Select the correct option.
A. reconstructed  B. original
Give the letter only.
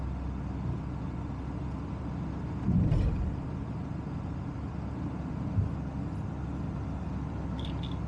B